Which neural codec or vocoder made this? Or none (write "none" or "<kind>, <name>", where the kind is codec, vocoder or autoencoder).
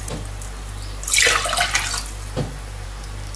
none